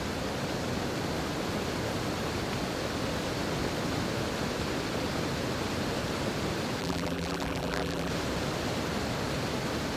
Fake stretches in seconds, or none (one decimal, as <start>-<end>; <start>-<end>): 6.8-8.1